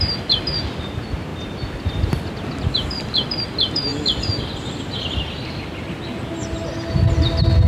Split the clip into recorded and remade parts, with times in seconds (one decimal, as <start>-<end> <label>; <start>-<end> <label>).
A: 0.0-7.7 recorded